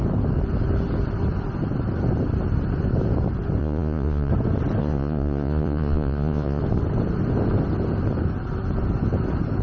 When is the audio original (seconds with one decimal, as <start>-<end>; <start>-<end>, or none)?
0.0-3.6; 4.3-4.8; 6.6-9.6